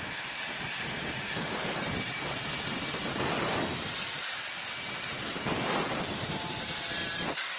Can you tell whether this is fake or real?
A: real